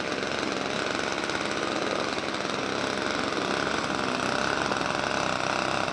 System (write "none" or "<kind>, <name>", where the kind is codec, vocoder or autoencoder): none